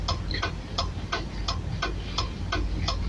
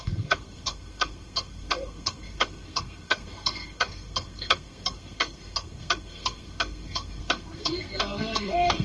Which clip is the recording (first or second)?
first